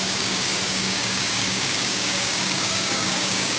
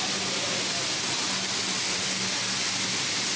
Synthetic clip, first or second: first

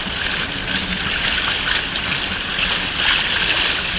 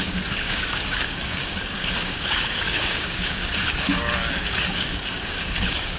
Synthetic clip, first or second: second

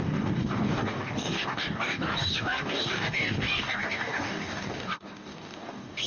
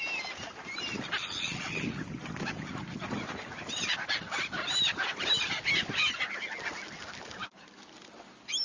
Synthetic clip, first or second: first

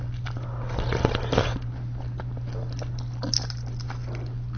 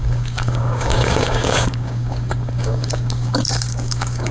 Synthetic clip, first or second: second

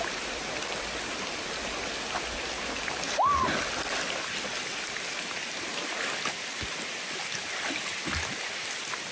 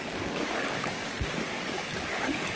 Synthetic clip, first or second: second